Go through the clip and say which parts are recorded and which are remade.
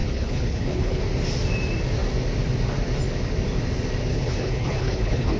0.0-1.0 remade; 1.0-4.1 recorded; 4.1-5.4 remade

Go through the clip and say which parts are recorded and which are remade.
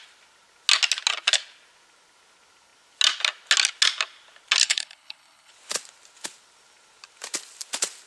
0.0-4.6 recorded; 4.6-5.5 remade; 5.5-8.1 recorded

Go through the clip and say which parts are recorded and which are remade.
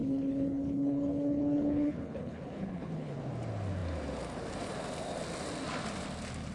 0.0-3.2 remade; 3.2-6.5 recorded